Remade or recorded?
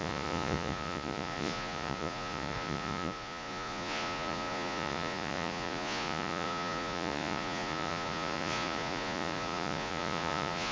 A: remade